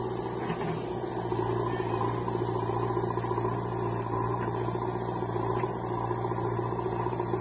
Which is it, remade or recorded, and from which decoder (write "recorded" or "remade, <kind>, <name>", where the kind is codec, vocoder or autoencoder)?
recorded